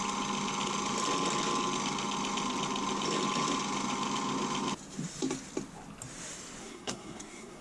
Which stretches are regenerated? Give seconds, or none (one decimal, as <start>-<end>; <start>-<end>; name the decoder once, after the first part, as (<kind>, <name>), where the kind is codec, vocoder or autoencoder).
6.6-7.6 (codec, SNAC)